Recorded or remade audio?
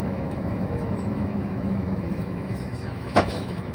remade